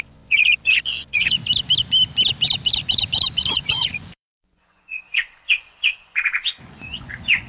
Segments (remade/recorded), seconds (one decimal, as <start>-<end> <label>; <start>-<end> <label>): 0.0-1.4 remade; 1.4-3.5 recorded; 3.5-7.5 remade